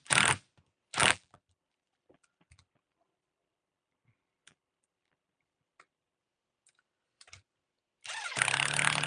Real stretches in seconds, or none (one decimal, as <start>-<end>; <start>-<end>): 0.0-1.0; 6.2-9.1